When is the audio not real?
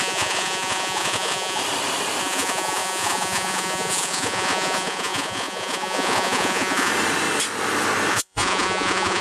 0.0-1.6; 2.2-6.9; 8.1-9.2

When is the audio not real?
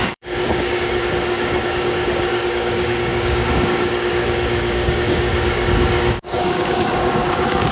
0.0-7.7